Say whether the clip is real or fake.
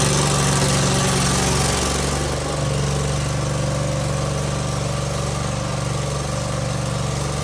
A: real